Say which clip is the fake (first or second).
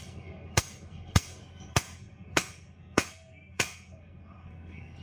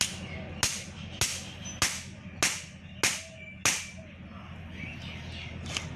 first